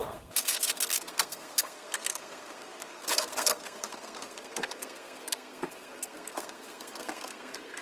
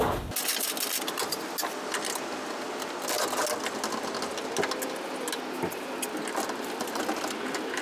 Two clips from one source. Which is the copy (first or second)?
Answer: first